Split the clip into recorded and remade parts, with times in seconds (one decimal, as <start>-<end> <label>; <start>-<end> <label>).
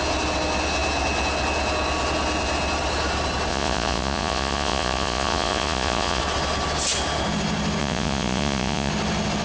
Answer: 0.0-3.5 recorded; 3.5-6.2 remade; 6.2-7.8 recorded; 7.8-8.9 remade; 8.9-9.4 recorded